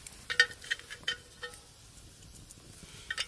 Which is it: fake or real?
real